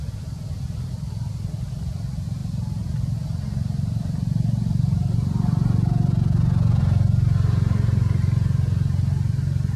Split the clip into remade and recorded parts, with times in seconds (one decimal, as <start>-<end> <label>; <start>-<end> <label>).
0.0-9.8 recorded